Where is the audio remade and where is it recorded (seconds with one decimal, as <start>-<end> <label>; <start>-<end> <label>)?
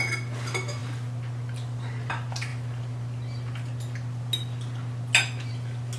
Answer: 0.0-6.0 recorded